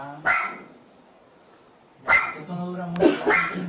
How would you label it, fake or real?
real